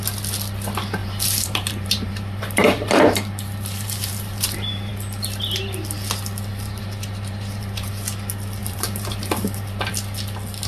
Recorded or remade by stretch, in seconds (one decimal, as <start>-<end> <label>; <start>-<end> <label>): 0.0-1.0 recorded; 1.0-4.9 remade; 4.9-6.5 recorded; 6.5-7.9 remade; 7.9-8.6 recorded; 8.6-9.9 remade; 9.9-10.7 recorded

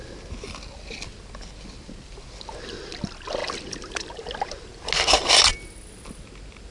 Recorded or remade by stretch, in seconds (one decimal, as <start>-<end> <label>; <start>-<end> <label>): 0.0-6.7 recorded

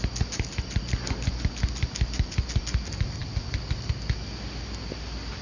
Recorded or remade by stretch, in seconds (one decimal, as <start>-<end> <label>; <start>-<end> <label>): 0.0-5.4 recorded

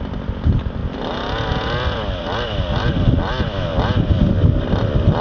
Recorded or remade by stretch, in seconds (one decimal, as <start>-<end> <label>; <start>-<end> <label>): 0.0-0.8 remade; 0.8-3.1 recorded; 3.1-3.7 remade; 3.7-4.3 recorded; 4.3-5.2 remade

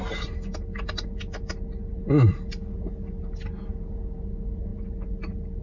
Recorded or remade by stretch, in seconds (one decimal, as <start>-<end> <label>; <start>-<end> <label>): 0.0-5.6 recorded